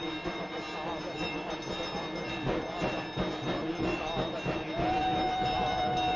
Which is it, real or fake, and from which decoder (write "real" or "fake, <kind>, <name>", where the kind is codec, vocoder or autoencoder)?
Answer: real